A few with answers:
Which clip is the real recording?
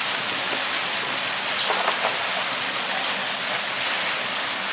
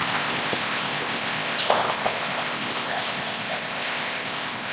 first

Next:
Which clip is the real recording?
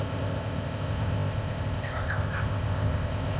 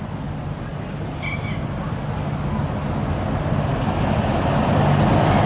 second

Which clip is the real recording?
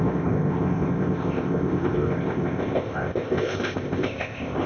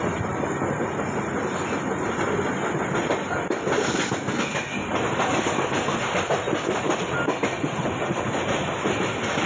second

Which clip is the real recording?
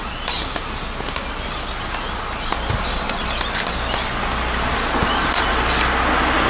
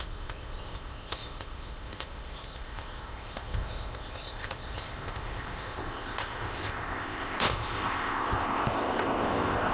first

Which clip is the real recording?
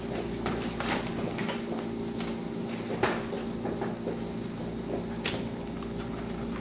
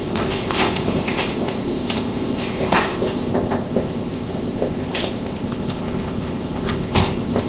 first